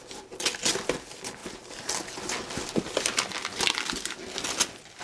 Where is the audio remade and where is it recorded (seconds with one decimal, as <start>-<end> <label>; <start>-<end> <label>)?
0.0-5.0 recorded